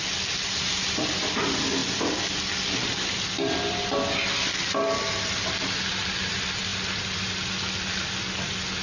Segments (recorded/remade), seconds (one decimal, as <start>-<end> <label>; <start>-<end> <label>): 0.0-8.8 recorded